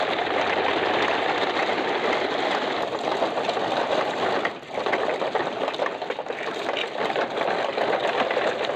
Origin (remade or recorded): recorded